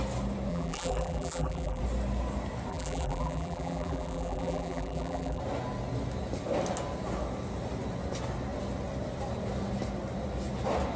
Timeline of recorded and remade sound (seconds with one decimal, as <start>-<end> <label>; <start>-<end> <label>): 0.0-0.5 recorded; 0.5-1.8 remade; 1.8-2.7 recorded; 2.7-5.4 remade; 5.4-11.0 recorded